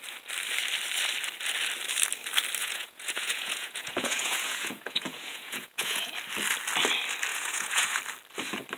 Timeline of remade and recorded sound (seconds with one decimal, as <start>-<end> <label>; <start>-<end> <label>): 0.0-2.6 recorded; 2.6-6.1 remade; 6.1-7.3 recorded; 7.3-8.0 remade; 8.0-8.8 recorded